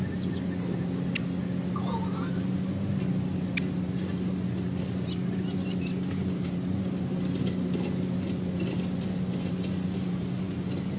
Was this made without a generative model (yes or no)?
yes